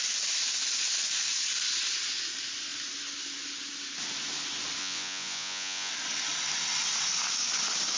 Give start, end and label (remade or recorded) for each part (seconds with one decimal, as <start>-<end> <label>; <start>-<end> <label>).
0.0-4.8 recorded; 4.8-5.9 remade; 5.9-8.0 recorded